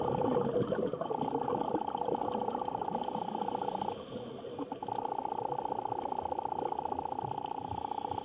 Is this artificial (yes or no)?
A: no